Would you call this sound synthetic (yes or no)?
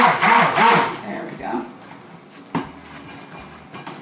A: no